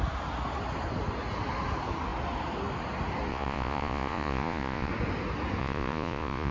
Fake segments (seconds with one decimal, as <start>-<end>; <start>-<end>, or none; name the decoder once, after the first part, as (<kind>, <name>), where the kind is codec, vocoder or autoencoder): 3.3-4.9 (vocoder, Vocos); 5.6-6.5